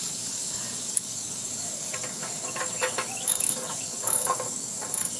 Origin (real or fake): fake